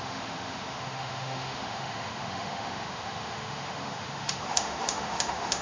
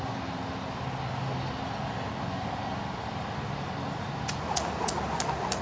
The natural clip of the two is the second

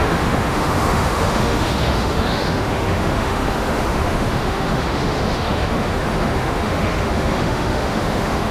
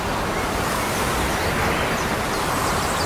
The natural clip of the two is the second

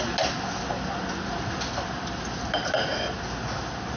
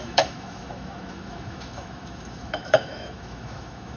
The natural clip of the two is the first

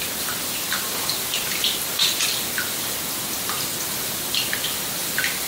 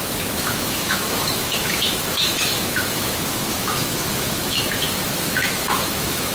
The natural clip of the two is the first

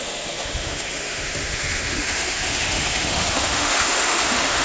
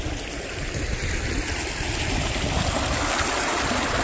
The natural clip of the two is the second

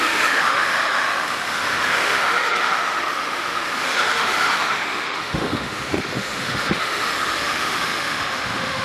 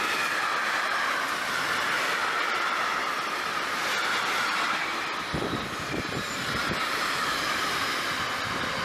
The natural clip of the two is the second